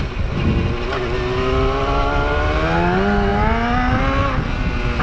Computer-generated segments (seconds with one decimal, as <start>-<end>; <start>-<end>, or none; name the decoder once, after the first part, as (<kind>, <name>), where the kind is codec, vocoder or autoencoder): none